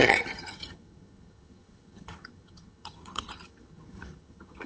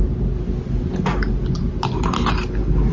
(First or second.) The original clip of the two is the second